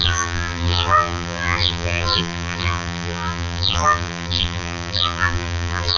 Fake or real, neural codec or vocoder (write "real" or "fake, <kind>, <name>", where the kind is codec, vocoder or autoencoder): fake, vocoder, BigVGAN v2